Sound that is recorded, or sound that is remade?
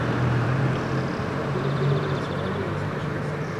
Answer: remade